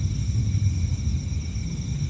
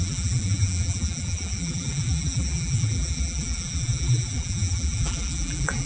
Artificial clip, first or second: second